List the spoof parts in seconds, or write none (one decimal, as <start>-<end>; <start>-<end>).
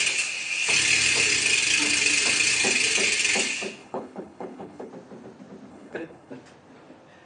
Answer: 3.8-4.9; 5.7-6.3